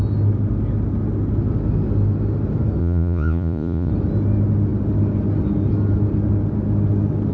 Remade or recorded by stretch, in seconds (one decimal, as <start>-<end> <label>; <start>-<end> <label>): 0.0-2.8 recorded; 2.8-3.9 remade; 3.9-7.3 recorded